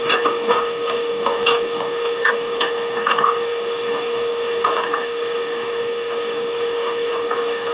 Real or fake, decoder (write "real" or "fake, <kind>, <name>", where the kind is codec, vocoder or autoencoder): fake, codec, DAC